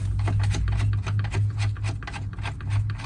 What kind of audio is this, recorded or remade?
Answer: recorded